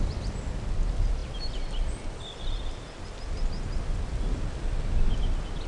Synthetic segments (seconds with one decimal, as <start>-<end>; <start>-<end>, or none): none

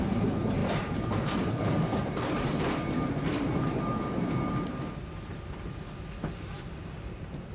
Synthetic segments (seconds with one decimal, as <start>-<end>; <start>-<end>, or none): 0.6-4.5

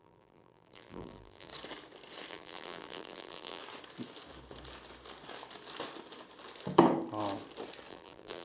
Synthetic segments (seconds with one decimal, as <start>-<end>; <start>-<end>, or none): 0.0-1.5; 2.3-3.6; 7.9-8.4

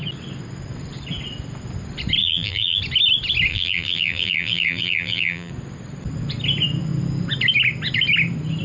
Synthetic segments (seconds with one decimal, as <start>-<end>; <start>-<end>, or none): 2.2-2.8; 3.5-5.5

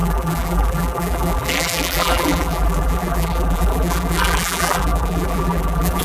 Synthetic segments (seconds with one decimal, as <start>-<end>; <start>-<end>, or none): 0.0-6.0